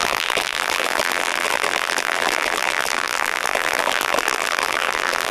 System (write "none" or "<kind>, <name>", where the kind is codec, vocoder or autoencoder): vocoder, BigVGAN v2